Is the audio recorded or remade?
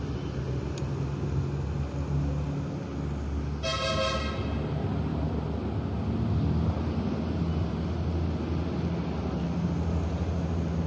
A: recorded